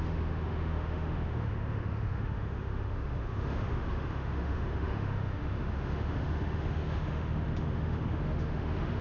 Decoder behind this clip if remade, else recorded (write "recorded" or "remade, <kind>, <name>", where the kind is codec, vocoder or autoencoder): remade, autoencoder, DAC-VAE